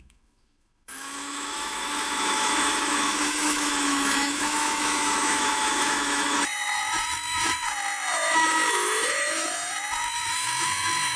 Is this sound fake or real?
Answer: fake